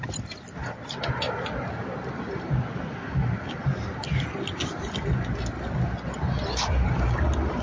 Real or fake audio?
real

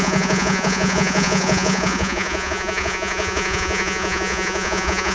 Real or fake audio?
fake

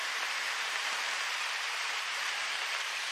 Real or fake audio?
fake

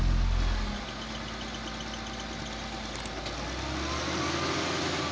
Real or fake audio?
real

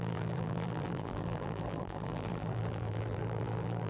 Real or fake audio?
fake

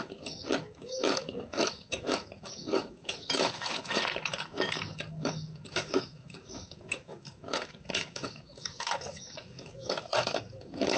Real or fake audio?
fake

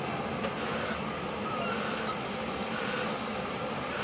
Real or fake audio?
real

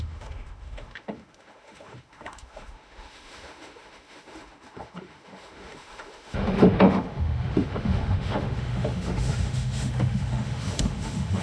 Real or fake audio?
fake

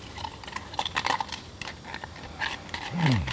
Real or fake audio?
real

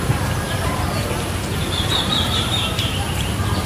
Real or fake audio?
fake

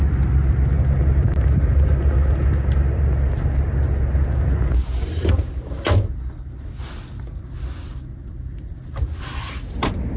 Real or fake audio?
real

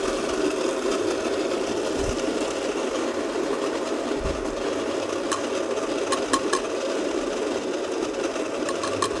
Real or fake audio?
real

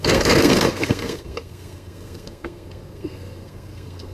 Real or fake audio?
fake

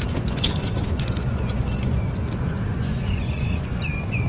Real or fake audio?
fake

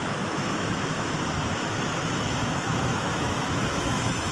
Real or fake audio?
fake